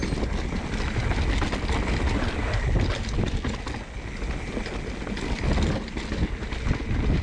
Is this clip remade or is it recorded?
recorded